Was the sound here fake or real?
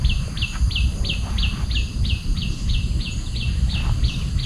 real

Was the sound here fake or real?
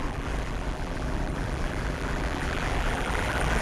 fake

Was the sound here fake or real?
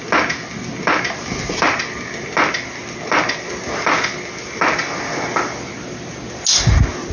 real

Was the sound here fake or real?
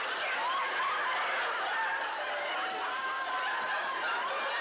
real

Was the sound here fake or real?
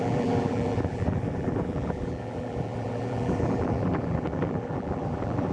fake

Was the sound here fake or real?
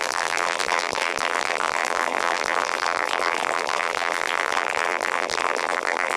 fake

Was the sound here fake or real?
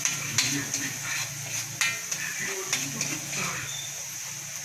real